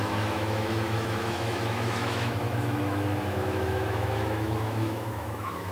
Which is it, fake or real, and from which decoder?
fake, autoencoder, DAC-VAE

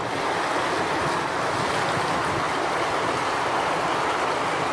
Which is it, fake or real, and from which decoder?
real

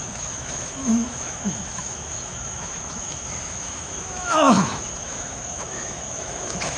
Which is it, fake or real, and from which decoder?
fake, autoencoder, DAC-VAE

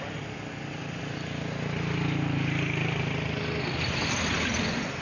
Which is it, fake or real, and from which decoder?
real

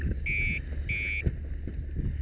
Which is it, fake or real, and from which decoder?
real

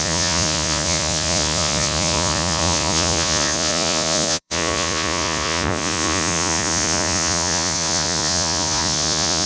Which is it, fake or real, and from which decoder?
fake, vocoder, Vocos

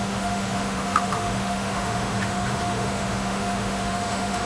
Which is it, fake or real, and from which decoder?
fake, autoencoder, DAC-VAE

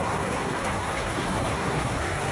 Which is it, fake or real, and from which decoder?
fake, codec, SNAC